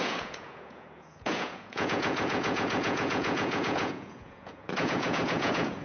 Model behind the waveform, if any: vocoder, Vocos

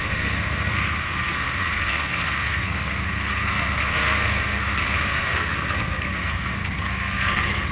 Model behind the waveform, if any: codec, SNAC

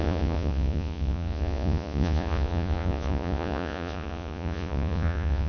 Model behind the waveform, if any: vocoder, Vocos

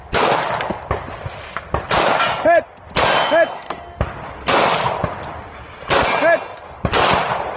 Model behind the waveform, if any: none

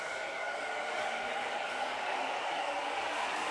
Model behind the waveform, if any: codec, DAC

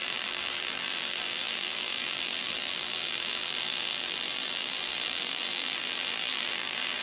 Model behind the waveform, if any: vocoder, BigVGAN v2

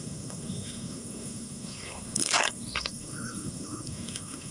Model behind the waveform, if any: codec, SNAC